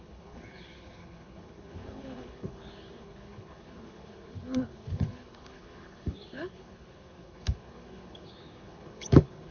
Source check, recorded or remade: remade